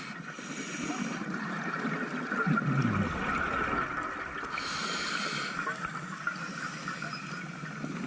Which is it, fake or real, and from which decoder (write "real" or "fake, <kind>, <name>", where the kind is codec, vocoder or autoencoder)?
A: real